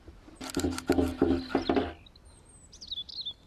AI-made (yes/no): no